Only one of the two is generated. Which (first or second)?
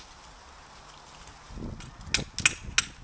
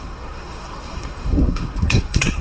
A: second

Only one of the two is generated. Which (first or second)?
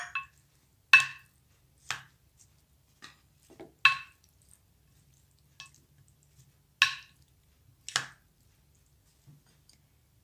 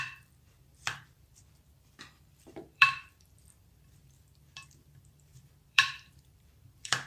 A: second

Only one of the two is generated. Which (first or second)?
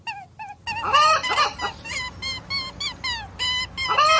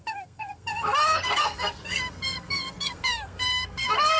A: second